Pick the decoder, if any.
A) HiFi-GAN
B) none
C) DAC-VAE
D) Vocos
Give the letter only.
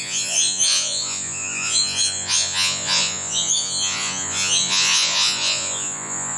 D